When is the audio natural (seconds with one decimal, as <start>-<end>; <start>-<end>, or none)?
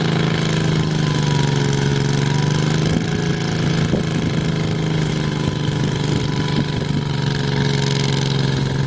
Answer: 0.0-8.9